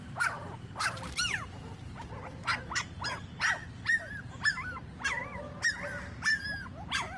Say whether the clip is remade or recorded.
recorded